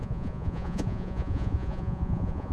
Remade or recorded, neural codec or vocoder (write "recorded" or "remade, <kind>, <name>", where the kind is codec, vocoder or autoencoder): remade, vocoder, Vocos